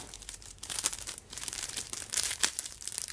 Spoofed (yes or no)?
yes